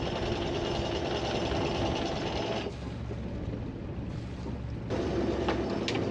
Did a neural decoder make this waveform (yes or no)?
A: no